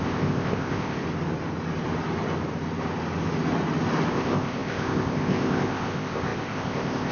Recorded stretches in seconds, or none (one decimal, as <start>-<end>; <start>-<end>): 1.0-4.1